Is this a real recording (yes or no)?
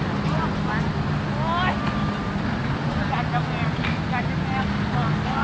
yes